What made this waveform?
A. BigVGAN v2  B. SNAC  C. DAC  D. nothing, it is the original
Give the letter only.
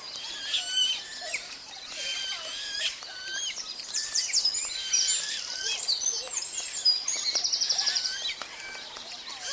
D